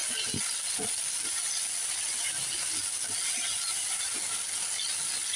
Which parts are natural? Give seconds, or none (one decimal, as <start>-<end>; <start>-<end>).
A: 0.0-5.4